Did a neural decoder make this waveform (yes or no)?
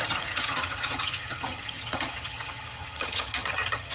yes